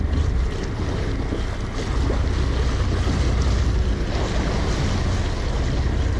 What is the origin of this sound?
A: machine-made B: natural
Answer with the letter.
B